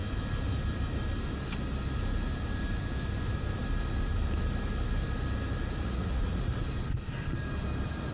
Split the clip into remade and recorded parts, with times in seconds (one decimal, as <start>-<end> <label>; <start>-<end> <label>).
0.0-5.8 recorded; 5.8-6.6 remade; 6.6-8.1 recorded